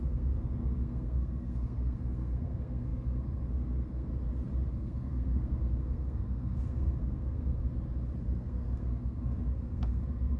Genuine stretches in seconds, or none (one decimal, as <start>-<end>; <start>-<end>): 4.1-4.7; 7.6-8.2